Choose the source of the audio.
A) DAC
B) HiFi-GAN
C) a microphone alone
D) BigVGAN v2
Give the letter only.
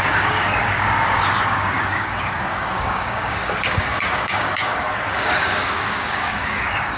A